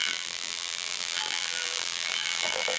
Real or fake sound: fake